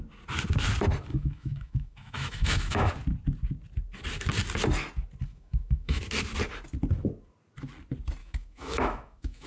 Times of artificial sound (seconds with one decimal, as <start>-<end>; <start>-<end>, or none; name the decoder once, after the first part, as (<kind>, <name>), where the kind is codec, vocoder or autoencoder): 1.1-2.9 (autoencoder, DAC-VAE); 5.3-6.0; 8.2-9.5